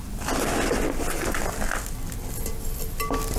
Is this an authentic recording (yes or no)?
yes